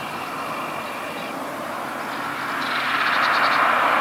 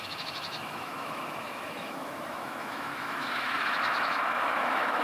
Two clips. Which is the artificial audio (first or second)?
second